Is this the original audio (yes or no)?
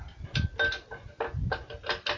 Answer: yes